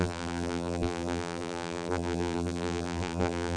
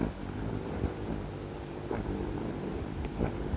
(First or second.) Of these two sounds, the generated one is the first